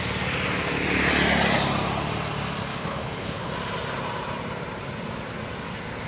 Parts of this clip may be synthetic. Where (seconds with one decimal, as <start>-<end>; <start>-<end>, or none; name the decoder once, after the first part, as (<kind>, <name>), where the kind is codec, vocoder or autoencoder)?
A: 2.7-3.5 (codec, HILCodec)